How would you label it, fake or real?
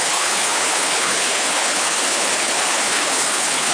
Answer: fake